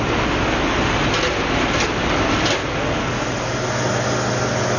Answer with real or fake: real